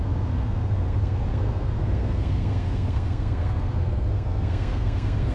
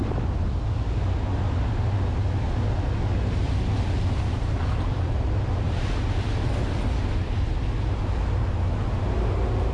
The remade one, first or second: first